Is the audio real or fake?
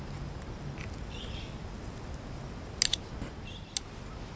real